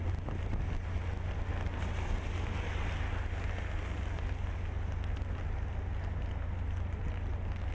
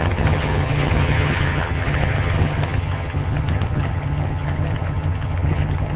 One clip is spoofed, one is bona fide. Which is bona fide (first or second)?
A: first